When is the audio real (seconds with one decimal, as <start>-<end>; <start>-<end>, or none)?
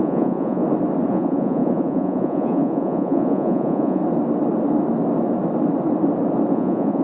0.6-1.1; 4.0-6.5